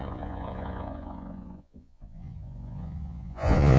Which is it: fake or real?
fake